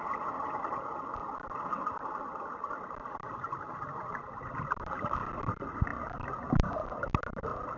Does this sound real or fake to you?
real